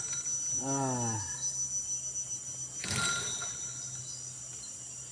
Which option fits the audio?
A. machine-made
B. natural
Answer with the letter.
B